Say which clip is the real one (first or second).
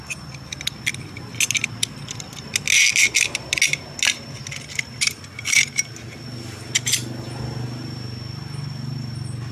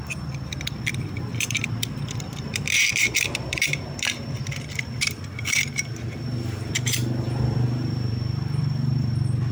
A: first